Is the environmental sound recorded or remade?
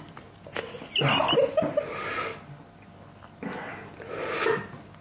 recorded